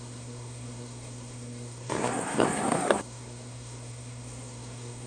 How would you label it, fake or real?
fake